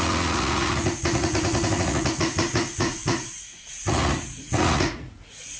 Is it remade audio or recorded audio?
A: remade